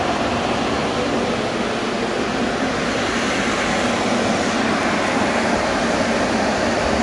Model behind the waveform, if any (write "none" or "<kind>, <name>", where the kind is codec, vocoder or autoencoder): none